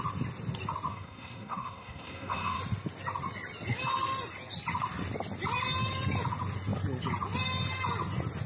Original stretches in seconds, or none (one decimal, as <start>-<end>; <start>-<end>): 0.0-0.9; 2.6-8.5